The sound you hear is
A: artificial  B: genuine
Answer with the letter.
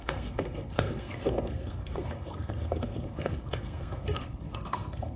A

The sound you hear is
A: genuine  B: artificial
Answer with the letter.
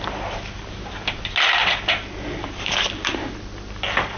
A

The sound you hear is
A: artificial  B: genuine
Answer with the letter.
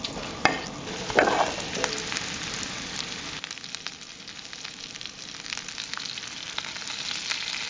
B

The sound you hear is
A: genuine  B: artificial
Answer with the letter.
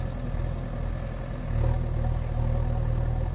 A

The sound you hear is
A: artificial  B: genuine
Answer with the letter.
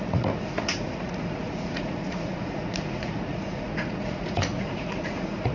A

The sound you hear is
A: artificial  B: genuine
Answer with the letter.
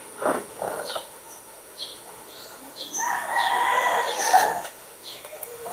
A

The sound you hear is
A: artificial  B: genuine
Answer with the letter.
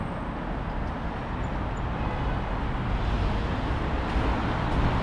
B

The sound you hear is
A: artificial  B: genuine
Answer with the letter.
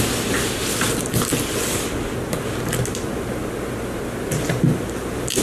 B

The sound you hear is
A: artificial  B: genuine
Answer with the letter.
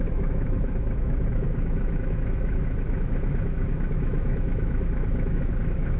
A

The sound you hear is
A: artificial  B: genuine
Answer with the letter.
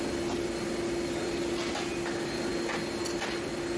B